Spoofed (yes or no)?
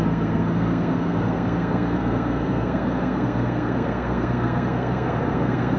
yes